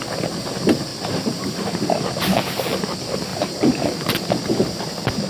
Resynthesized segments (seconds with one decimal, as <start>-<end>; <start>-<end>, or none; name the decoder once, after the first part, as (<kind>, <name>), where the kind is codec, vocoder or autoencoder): 0.9-1.8 (vocoder, BigVGAN v2); 3.3-4.3